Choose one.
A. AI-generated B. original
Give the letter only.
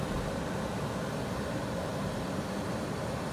B